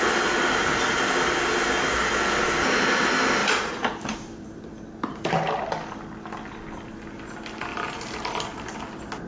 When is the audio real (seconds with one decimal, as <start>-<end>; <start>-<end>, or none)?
0.0-3.4; 5.3-7.7; 8.8-9.3

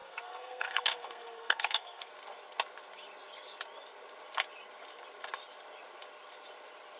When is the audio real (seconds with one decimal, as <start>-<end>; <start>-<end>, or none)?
2.1-7.0

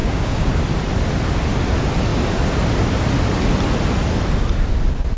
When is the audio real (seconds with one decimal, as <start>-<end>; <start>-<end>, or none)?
0.5-5.2

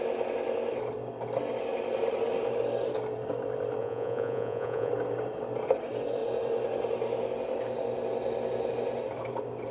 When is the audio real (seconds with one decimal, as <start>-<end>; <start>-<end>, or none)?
0.0-3.8; 4.9-9.7

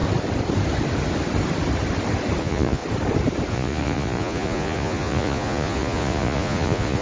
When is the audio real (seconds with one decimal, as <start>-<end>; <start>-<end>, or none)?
0.0-2.4; 2.8-3.5

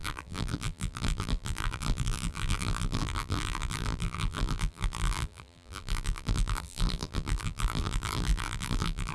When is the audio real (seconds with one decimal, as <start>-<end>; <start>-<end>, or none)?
none